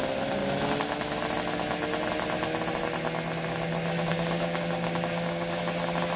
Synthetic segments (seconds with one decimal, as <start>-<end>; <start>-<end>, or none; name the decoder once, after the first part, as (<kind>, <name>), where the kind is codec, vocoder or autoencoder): 4.1-5.6 (codec, DAC)